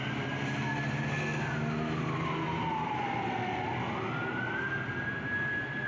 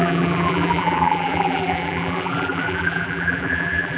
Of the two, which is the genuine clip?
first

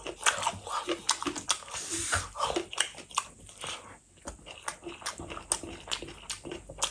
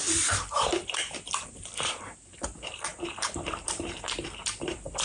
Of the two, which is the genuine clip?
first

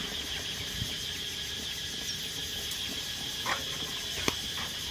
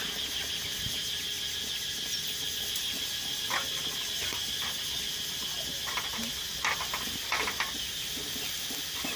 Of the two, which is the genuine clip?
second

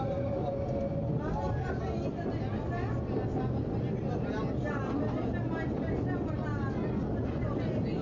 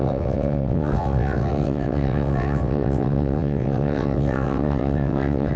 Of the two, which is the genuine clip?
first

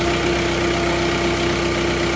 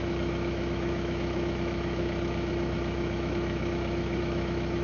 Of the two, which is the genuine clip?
first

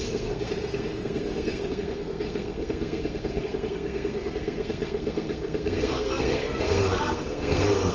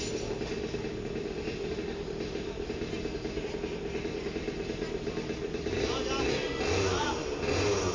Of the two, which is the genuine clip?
second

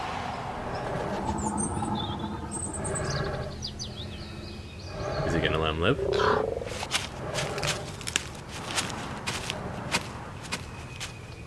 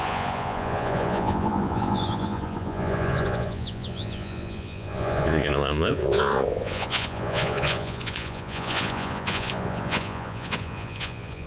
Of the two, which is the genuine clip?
first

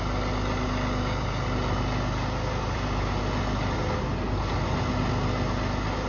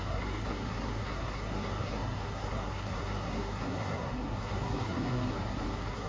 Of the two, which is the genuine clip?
first